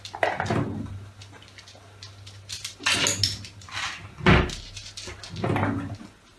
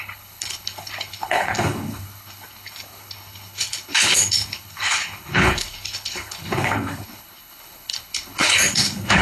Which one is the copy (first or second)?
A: second